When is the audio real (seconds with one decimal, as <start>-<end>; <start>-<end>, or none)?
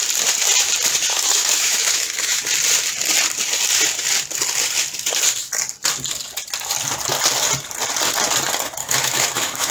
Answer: 0.0-1.1; 2.4-8.8